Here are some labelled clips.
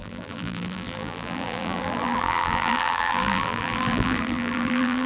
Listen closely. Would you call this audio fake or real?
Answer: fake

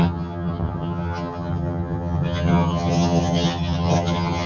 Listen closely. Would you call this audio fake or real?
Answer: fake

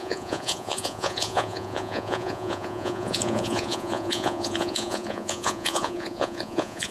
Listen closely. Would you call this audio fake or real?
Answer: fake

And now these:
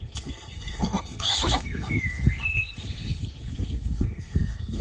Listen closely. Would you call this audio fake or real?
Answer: fake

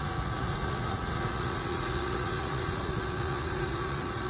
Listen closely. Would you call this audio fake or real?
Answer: fake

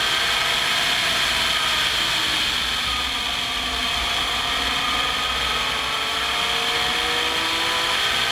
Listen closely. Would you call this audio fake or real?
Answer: real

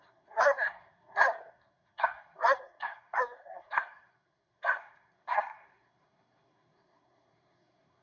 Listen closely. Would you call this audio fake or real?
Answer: fake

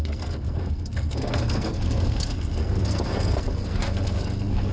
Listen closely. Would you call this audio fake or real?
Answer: fake